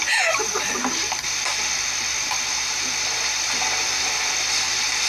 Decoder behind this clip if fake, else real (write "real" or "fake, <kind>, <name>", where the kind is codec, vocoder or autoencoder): real